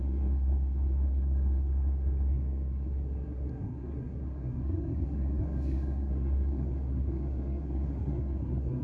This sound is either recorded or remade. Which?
remade